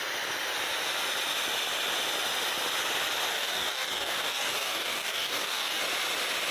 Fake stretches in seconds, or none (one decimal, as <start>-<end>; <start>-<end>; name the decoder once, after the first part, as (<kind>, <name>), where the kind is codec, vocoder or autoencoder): 3.3-5.8 (codec, DAC)